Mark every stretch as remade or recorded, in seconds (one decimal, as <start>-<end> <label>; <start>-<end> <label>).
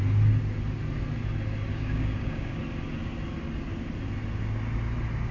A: 0.0-1.7 recorded; 1.7-2.6 remade; 2.6-5.3 recorded